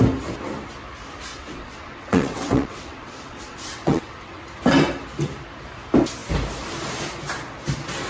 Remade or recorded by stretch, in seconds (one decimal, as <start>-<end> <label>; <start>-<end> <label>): 0.0-1.3 recorded; 1.3-4.4 remade; 4.4-8.1 recorded